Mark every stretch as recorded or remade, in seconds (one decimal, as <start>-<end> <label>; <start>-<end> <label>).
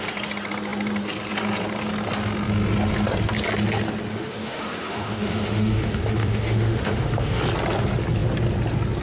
0.0-4.1 recorded; 4.1-7.4 remade; 7.4-9.0 recorded